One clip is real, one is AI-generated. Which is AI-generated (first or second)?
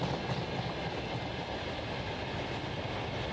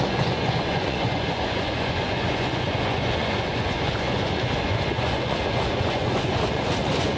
second